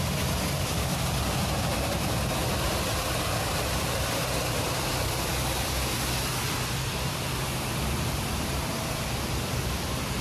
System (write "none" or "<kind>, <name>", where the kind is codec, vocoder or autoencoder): vocoder, BigVGAN v2